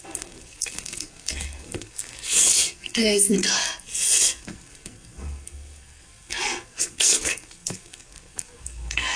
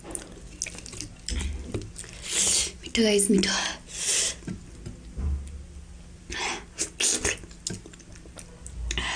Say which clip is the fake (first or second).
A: first